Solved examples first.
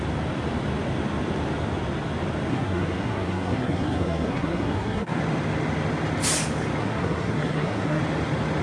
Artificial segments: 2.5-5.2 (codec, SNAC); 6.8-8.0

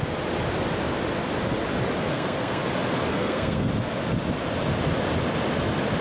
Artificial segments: 2.1-2.6 (codec, SNAC); 3.1-3.7

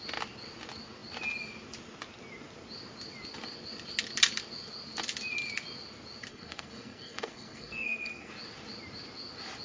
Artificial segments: 6.3-8.3 (codec, SNAC)

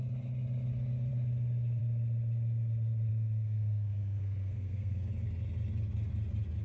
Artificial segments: 3.1-5.1 (codec, SNAC)

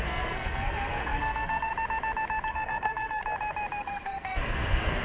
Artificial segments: 0.0-1.7 (codec, SNAC); 2.5-3.2; 3.8-5.0